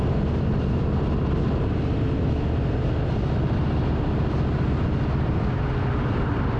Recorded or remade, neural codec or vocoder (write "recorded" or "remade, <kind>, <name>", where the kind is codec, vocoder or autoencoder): recorded